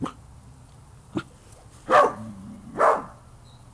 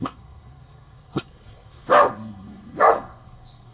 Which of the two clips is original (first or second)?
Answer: first